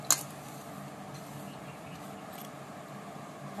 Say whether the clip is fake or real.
real